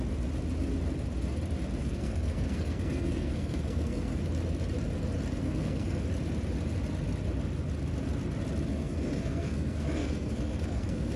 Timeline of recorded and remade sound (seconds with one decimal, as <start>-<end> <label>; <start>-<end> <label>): 0.0-1.8 recorded; 1.8-4.2 remade; 4.2-5.4 recorded; 5.4-6.0 remade; 6.0-8.7 recorded; 8.7-11.2 remade